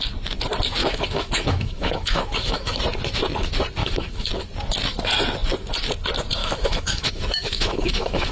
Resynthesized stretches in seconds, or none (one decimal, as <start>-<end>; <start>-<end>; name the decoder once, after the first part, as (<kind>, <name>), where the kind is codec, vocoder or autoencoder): 0.8-2.8 (autoencoder, DAC-VAE); 3.8-4.3; 6.4-8.3